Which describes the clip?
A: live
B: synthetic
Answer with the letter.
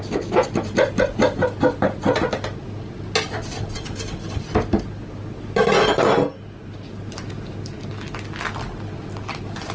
A